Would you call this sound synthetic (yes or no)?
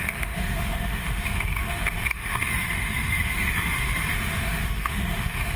yes